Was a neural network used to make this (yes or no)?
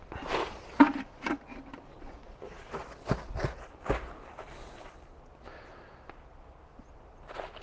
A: no